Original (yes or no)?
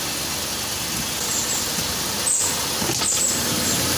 yes